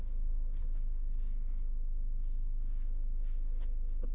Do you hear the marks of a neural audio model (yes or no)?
no